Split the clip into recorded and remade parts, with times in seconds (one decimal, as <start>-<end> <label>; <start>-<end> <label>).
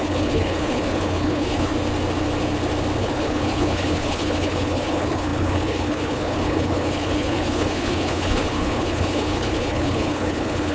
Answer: 0.0-1.7 remade; 1.7-3.0 recorded; 3.0-10.7 remade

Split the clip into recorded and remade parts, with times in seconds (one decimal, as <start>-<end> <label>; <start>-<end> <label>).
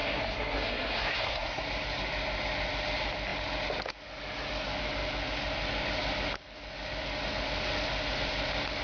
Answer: 0.0-1.6 remade; 1.6-8.8 recorded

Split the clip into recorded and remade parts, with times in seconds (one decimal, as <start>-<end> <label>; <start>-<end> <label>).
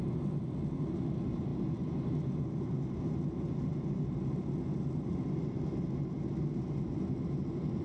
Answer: 0.0-7.8 recorded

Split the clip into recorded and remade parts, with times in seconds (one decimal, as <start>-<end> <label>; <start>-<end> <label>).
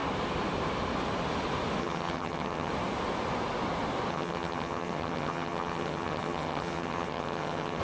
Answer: 0.0-1.8 recorded; 1.8-2.7 remade; 2.7-4.1 recorded; 4.1-7.8 remade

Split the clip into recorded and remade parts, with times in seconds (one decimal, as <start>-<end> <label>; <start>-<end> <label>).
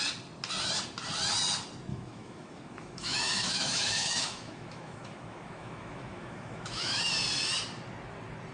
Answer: 0.0-1.9 recorded; 1.9-7.0 remade; 7.0-8.5 recorded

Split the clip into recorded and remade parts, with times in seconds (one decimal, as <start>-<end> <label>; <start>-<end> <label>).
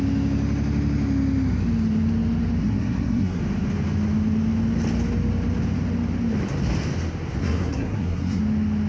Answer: 0.0-2.6 recorded; 2.6-3.4 remade; 3.4-7.4 recorded; 7.4-8.4 remade; 8.4-8.9 recorded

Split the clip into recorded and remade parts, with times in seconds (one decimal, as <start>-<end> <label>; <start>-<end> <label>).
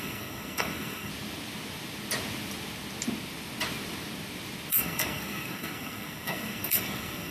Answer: 0.0-1.1 remade; 1.1-4.7 recorded; 4.7-7.3 remade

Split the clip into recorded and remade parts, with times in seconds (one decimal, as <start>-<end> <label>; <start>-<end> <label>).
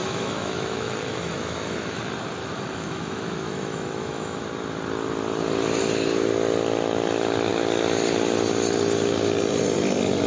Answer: 0.0-2.0 remade; 2.0-2.4 recorded; 2.4-4.4 remade; 4.4-10.3 recorded